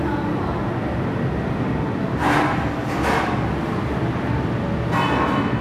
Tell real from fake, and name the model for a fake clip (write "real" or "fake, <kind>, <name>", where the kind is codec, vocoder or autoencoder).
real